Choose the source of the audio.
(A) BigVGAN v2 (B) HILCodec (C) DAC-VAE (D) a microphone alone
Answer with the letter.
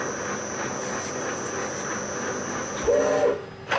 D